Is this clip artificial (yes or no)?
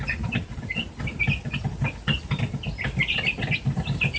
no